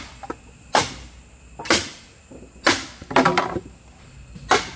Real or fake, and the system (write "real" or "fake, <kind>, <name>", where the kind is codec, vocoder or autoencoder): real